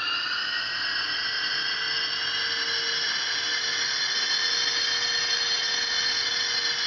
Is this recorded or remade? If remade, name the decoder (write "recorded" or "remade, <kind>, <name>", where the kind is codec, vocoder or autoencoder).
recorded